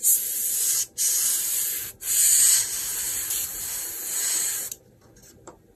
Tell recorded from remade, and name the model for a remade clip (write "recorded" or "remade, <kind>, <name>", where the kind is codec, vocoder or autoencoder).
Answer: remade, vocoder, BigVGAN v2